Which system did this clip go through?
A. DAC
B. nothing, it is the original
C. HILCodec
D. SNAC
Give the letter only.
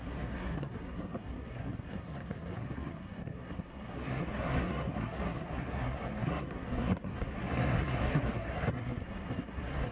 D